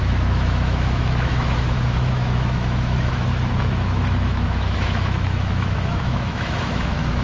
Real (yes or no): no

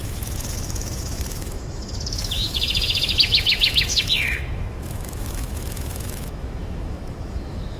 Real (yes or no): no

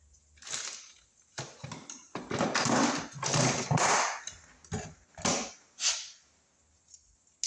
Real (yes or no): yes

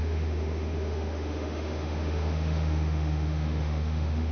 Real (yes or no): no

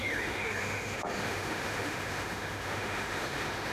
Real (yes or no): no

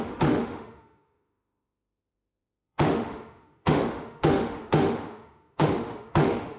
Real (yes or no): no